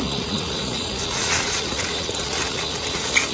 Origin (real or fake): fake